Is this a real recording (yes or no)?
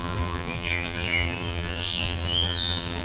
no